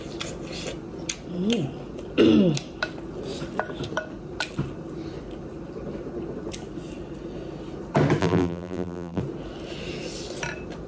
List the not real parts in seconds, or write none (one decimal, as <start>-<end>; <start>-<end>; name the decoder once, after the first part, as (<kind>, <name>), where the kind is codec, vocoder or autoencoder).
8.2-9.2 (vocoder, BigVGAN v2)